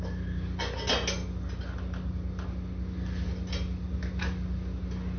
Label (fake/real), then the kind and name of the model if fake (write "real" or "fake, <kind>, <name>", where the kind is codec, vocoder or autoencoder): real